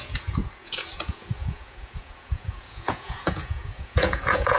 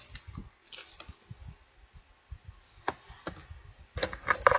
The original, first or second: second